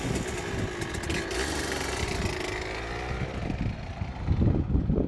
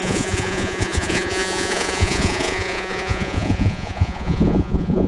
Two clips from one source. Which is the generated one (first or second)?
second